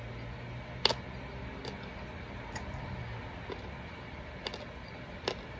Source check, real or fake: real